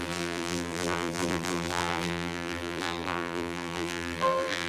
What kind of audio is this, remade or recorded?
remade